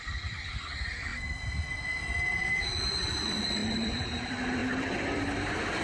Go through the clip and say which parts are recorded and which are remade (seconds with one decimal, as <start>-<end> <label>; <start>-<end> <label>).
0.0-1.1 remade; 1.1-2.4 recorded; 2.4-5.8 remade